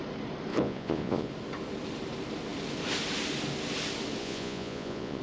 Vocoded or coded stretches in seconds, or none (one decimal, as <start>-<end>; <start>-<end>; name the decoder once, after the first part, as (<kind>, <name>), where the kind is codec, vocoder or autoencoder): 0.5-1.3 (vocoder, Vocos); 4.2-5.2